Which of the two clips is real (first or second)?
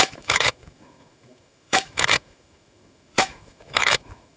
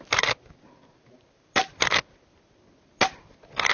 second